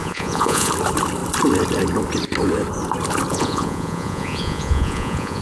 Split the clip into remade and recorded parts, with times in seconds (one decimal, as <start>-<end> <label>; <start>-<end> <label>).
0.0-0.7 remade; 0.7-3.3 recorded; 3.3-5.4 remade